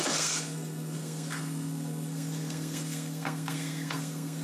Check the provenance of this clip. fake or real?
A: fake